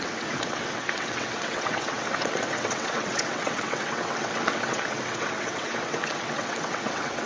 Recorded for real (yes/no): no